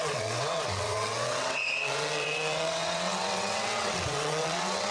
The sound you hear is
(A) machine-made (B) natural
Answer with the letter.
A